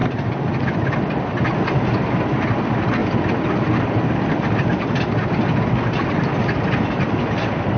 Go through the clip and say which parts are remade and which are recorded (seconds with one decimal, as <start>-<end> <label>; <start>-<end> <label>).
0.0-7.8 recorded